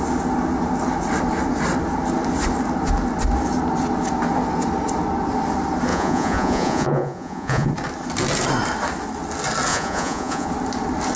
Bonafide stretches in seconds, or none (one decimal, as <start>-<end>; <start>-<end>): 0.0-5.9; 7.7-9.7; 10.5-11.2